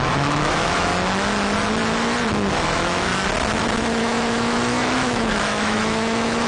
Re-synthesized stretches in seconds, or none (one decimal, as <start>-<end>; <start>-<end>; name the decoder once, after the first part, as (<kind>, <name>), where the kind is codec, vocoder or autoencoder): 0.0-0.9 (autoencoder, DAC-VAE); 2.5-3.1; 4.0-6.5